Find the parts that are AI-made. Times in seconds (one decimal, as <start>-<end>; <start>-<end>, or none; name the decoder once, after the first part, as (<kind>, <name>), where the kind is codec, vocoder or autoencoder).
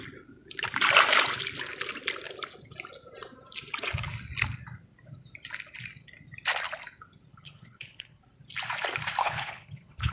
7.3-8.2 (codec, HILCodec); 9.2-10.1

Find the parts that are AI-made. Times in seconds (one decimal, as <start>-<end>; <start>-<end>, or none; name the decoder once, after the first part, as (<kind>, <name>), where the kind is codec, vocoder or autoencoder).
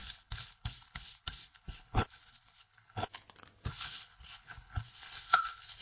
0.0-3.1 (codec, HILCodec); 3.7-5.8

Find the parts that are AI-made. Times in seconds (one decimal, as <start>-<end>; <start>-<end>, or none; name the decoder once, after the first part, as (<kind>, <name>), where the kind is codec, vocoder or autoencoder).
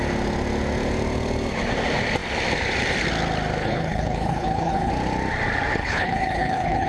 3.6-4.9 (codec, HILCodec); 5.8-6.9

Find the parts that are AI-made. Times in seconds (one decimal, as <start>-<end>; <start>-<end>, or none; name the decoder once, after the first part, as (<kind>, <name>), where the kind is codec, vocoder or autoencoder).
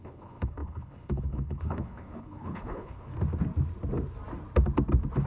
0.0-3.1 (codec, HILCodec)